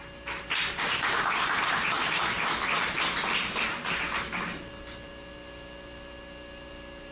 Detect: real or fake real